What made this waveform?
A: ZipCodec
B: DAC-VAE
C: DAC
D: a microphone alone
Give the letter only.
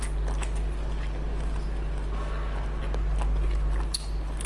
D